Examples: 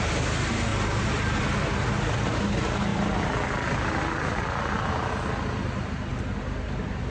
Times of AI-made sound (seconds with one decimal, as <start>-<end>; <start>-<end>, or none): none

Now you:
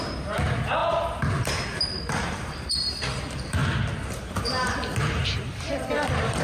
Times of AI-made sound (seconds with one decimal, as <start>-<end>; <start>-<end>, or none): 0.0-3.6; 5.4-6.4

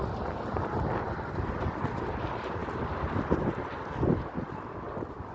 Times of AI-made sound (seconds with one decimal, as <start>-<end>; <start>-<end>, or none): none

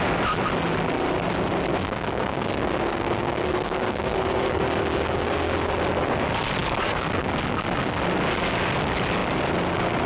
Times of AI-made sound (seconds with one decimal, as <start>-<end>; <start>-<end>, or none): 1.7-5.7; 6.6-7.2

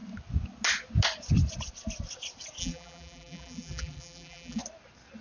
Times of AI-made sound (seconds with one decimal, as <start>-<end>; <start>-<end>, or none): 2.6-4.6

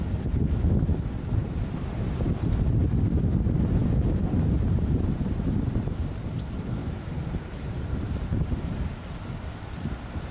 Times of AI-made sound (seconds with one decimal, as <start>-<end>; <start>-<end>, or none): 1.4-2.3; 6.8-7.9